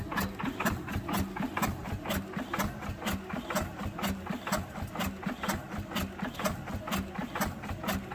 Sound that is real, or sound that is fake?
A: real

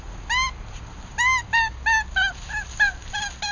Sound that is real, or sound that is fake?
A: real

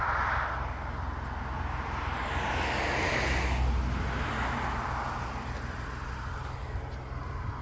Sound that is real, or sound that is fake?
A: real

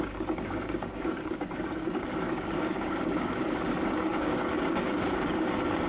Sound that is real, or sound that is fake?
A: fake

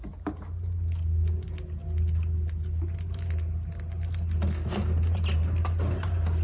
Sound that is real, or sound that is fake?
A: real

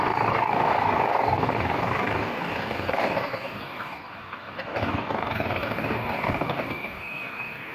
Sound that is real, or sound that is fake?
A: fake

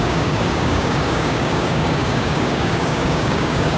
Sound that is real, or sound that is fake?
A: fake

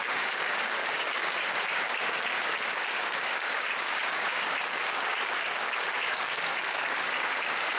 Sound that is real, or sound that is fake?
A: fake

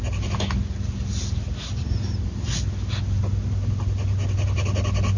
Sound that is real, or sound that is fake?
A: real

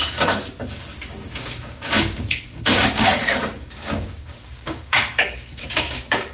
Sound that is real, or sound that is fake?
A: fake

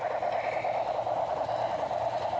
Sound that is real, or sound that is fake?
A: real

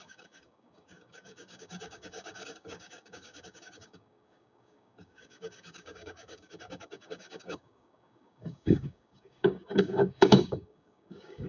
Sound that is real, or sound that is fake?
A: fake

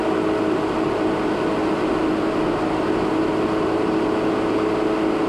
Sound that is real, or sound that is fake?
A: real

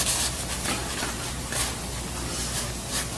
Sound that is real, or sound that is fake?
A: real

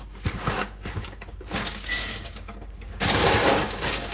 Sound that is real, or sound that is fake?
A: fake